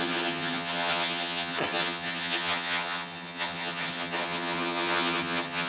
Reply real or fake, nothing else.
fake